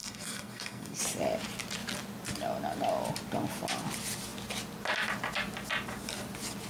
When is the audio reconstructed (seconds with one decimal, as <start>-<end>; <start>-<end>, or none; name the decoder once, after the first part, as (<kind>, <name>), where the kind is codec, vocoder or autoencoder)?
0.0-1.0 (codec, SNAC)